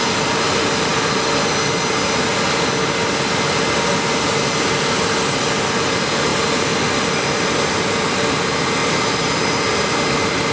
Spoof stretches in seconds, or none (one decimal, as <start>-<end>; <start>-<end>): none